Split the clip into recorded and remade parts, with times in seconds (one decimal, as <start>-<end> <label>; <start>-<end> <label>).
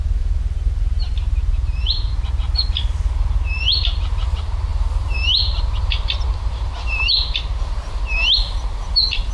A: 0.0-1.4 recorded; 1.4-2.1 remade; 2.1-9.3 recorded